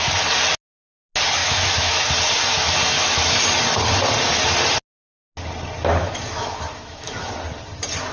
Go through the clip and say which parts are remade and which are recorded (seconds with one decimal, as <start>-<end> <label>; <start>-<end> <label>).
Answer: 0.0-1.4 recorded; 1.4-2.1 remade; 2.1-2.5 recorded; 2.5-3.4 remade; 3.4-5.9 recorded; 5.9-7.3 remade; 7.3-8.1 recorded